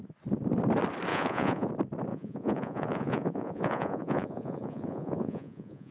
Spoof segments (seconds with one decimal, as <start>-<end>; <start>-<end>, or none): 1.1-1.7; 2.1-5.9